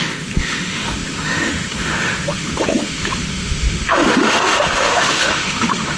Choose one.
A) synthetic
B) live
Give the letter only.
A